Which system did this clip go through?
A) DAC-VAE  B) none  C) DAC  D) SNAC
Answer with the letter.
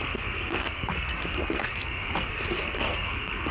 D